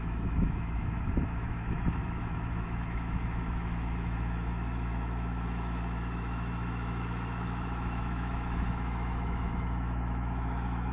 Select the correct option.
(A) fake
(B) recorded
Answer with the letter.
A